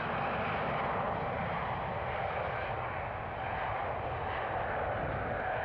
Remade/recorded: recorded